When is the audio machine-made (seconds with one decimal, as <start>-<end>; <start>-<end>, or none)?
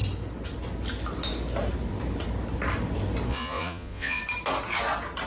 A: 3.3-4.2